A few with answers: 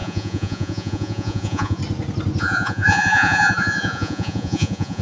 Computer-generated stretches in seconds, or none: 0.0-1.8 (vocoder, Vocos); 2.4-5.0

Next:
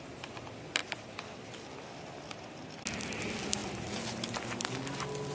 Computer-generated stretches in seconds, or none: none

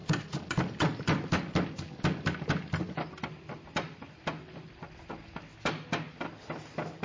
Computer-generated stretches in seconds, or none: none

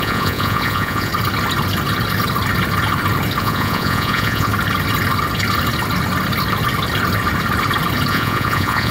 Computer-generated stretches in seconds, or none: 0.0-1.1 (vocoder, Vocos); 3.4-4.5; 8.1-8.9

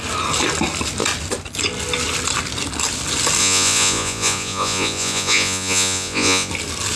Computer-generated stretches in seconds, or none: 3.4-6.5 (vocoder, Vocos)

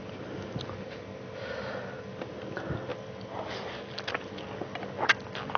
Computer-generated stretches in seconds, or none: none

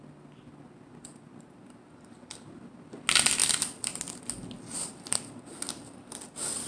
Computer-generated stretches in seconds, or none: none

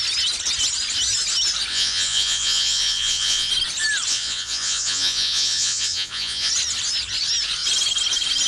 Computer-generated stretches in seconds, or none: 1.7-3.5 (vocoder, Vocos); 4.1-6.5